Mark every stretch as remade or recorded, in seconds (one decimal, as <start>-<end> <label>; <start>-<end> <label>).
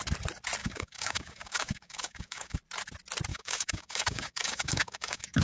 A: 0.0-0.6 recorded; 0.6-2.6 remade; 2.6-3.3 recorded; 3.3-5.4 remade